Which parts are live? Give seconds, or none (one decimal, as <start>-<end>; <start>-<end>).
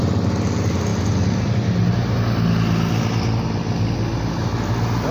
0.0-5.1